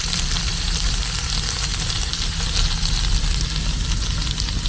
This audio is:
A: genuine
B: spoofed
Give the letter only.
A